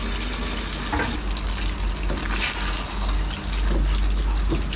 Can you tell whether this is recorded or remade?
recorded